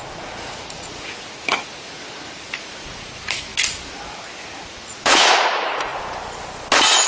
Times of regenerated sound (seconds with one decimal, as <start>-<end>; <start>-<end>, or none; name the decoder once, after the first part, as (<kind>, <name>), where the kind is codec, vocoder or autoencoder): 0.0-3.5 (vocoder, Vocos); 4.6-5.9